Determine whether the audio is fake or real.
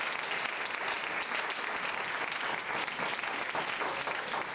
real